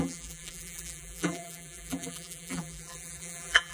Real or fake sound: fake